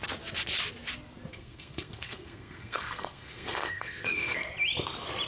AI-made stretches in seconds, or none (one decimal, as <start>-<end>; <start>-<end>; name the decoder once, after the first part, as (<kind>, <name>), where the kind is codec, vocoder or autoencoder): 1.3-4.5 (codec, SNAC)